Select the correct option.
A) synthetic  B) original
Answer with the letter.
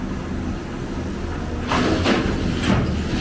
B